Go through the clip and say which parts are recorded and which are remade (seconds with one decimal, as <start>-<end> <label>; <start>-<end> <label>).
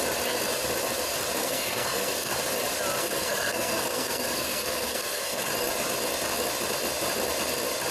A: 0.0-1.4 recorded; 1.4-2.3 remade; 2.3-3.0 recorded; 3.0-5.5 remade; 5.5-7.9 recorded